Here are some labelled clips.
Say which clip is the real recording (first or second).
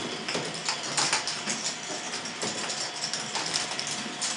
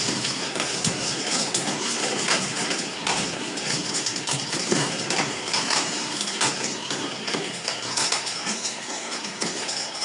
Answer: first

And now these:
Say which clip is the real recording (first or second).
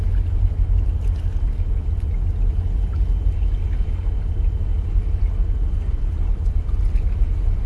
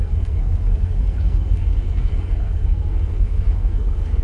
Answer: first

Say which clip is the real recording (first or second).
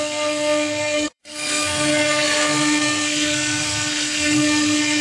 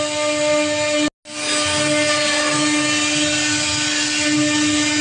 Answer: second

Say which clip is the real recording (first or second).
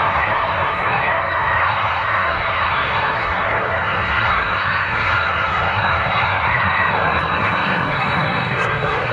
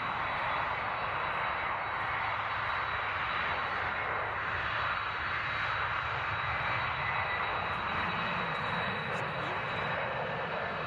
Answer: second